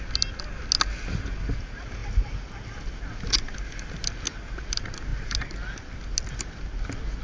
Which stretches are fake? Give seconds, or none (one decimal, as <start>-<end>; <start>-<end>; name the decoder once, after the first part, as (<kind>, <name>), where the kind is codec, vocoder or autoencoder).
none